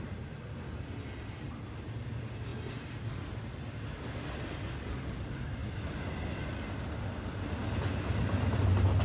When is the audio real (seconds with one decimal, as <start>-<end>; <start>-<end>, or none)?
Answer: 0.0-9.0